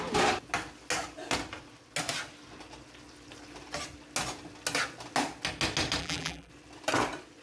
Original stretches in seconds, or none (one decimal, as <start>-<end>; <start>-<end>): 0.0-6.0; 6.5-7.4